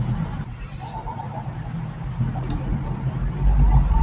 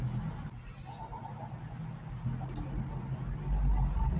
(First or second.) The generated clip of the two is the first